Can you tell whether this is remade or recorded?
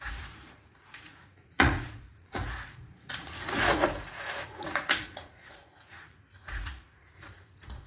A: remade